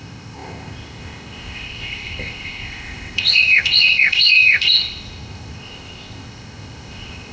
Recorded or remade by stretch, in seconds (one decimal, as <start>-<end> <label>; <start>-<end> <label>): 0.0-7.3 remade